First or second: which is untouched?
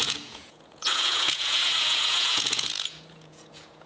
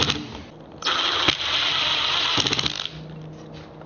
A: second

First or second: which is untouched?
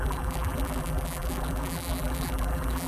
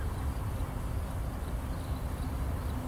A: second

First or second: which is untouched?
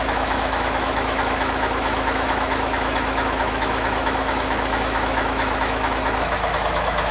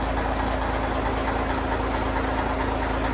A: second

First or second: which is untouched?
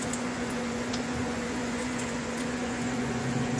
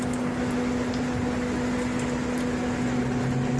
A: second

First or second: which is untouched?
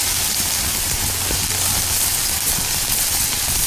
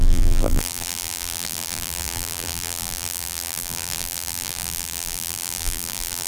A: first